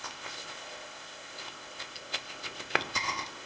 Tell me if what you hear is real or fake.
fake